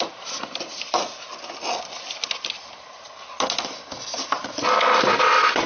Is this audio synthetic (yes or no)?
no